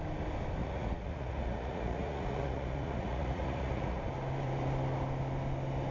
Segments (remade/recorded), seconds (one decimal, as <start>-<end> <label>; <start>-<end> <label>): 0.0-0.6 recorded; 0.6-4.0 remade; 4.0-5.9 recorded